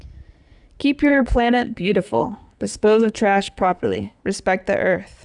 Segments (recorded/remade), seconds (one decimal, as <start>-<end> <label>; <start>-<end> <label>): 0.0-1.1 recorded; 1.1-4.2 remade; 4.2-5.2 recorded